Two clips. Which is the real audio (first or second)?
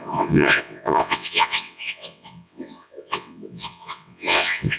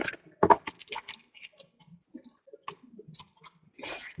second